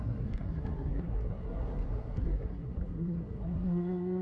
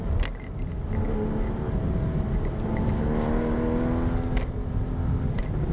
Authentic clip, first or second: second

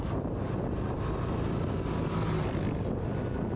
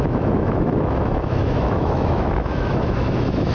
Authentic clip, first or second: first